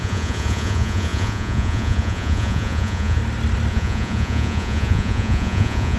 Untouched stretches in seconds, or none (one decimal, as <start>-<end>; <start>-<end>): 3.2-3.7